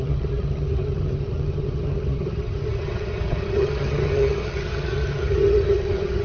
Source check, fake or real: fake